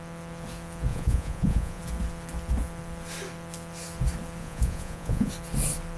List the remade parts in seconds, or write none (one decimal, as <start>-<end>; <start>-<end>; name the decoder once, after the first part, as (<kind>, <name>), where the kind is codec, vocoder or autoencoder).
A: 0.9-1.8 (vocoder, Vocos); 4.4-5.3